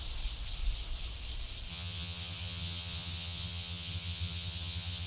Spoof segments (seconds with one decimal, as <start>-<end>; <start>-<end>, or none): 1.7-5.1